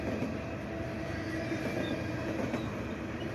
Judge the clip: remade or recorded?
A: recorded